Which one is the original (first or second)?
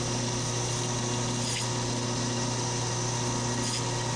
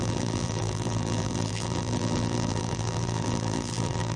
first